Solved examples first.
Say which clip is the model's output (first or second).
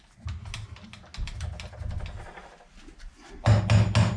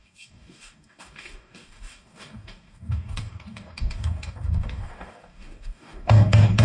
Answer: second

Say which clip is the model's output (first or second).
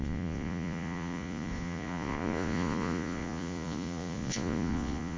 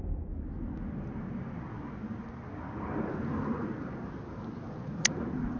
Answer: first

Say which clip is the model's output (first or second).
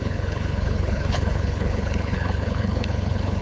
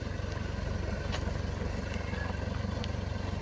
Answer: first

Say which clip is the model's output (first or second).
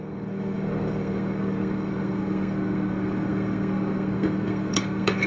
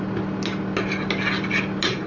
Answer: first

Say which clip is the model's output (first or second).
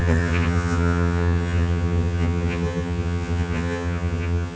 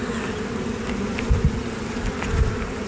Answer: first